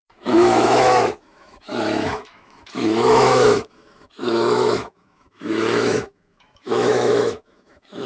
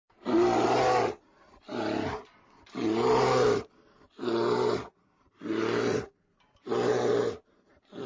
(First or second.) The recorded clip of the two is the second